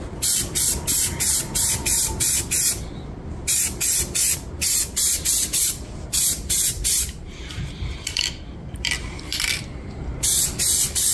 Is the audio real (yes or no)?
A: no